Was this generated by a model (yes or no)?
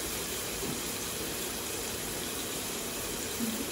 yes